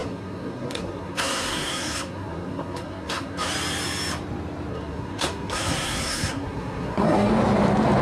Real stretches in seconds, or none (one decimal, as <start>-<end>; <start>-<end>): 3.5-4.7; 7.3-8.0